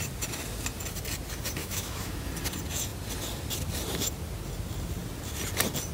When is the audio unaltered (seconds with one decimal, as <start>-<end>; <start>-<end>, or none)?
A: 0.0-1.6; 2.3-5.9

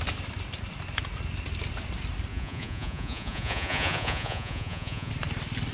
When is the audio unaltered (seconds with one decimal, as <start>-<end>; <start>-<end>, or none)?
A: 0.0-2.3; 5.1-5.7

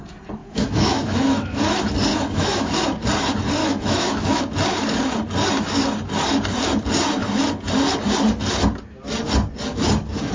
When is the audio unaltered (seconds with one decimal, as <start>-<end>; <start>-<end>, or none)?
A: 0.0-0.4; 1.6-2.1; 2.7-3.6; 4.4-10.3

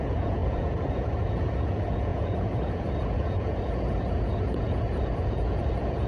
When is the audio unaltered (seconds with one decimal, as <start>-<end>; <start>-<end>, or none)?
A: none

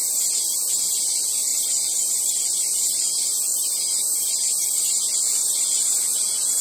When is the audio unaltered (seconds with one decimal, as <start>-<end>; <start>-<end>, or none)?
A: 0.0-1.5; 2.7-5.1; 5.6-6.6

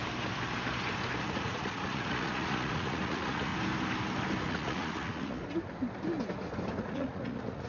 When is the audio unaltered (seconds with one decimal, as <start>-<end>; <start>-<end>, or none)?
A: 0.0-1.2; 3.5-4.4; 5.4-6.8